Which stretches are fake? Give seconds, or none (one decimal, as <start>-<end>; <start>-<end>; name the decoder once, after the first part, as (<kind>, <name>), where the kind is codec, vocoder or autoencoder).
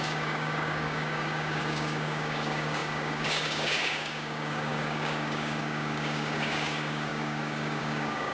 0.0-8.3 (codec, DAC)